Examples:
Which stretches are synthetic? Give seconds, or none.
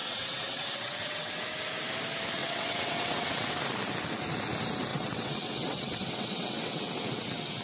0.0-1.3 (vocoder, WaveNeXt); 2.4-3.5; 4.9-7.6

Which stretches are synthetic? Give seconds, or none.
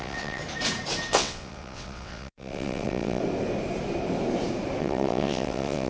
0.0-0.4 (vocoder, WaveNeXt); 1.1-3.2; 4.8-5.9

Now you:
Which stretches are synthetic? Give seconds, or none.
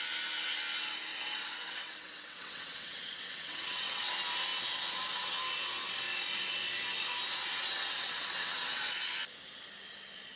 1.1-4.1 (vocoder, WaveNeXt); 7.5-8.8